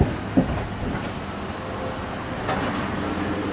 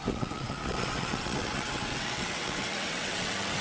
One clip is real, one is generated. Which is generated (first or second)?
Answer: second